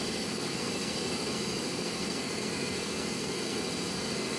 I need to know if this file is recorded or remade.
remade